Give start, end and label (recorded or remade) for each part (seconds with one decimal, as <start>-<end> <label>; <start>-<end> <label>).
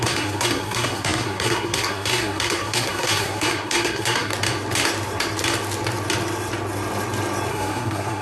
0.0-4.3 remade; 4.3-7.5 recorded; 7.5-8.2 remade